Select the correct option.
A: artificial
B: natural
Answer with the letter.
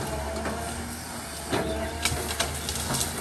B